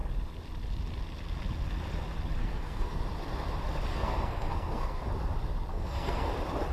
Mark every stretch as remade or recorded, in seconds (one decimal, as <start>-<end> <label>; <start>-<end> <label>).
0.0-2.4 recorded; 2.4-3.0 remade; 3.0-3.9 recorded; 3.9-5.1 remade; 5.1-5.7 recorded; 5.7-6.3 remade; 6.3-6.7 recorded